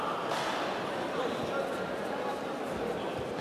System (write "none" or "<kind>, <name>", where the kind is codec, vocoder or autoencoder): none